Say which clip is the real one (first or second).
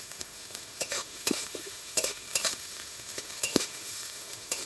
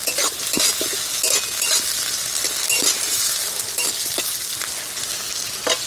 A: second